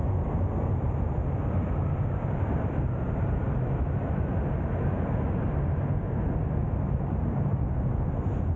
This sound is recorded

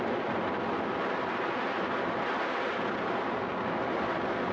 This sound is recorded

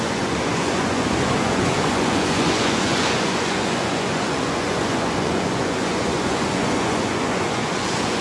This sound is remade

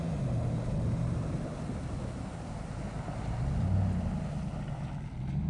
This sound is recorded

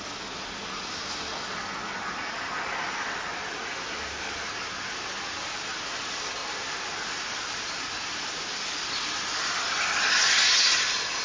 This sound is recorded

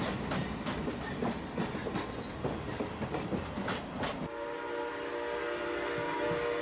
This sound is recorded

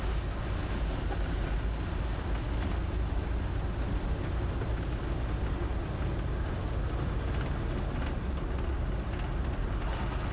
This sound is recorded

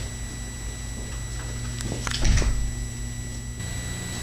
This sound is recorded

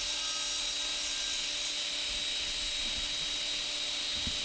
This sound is recorded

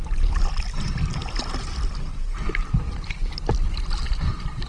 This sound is recorded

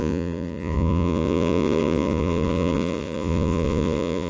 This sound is remade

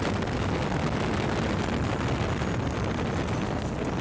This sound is recorded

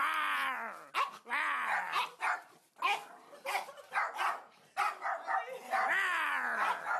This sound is recorded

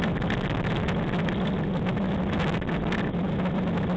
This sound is recorded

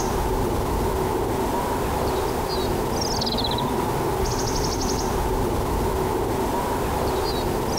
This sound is recorded